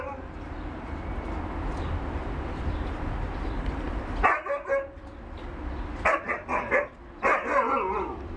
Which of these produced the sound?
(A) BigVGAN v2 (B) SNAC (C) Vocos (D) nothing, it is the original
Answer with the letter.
D